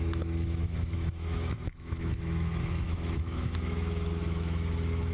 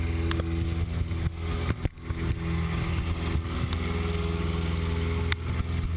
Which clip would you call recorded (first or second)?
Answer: second